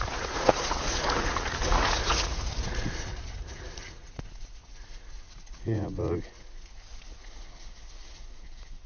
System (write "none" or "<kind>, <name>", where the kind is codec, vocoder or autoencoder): vocoder, Vocos